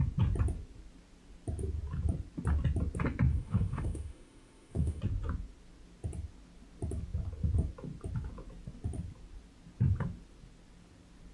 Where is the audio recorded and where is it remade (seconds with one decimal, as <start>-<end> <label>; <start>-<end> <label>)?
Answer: 0.0-3.3 recorded; 3.3-5.0 remade; 5.0-11.3 recorded